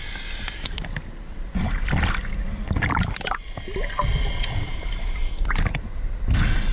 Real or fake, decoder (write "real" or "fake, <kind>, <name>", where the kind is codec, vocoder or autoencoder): real